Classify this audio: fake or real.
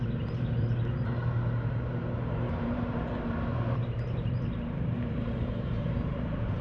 fake